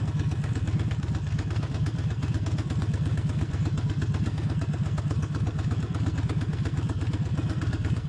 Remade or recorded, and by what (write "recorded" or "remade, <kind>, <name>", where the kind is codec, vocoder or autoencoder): remade, codec, SNAC